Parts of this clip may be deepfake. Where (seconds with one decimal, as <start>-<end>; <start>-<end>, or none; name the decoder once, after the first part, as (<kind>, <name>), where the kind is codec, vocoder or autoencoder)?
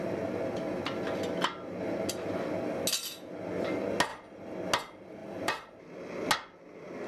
4.1-4.7 (vocoder, BigVGAN v2); 5.2-5.8